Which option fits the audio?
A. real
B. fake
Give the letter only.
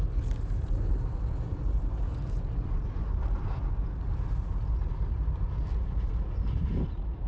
A